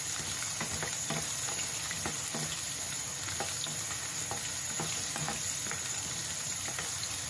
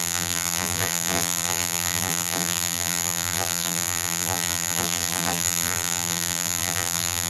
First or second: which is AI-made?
second